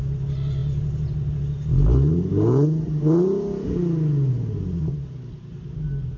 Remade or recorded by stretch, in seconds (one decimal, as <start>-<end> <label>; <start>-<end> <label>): 0.0-6.2 recorded